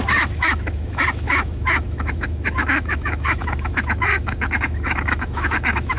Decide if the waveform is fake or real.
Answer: fake